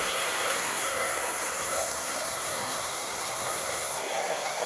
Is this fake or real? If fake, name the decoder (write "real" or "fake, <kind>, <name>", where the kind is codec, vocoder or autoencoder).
fake, codec, SNAC